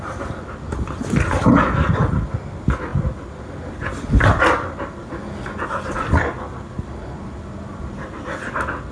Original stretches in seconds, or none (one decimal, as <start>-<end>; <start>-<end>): 0.0-8.9